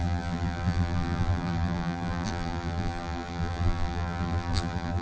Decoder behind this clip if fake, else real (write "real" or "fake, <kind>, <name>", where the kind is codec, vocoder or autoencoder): fake, vocoder, BigVGAN v2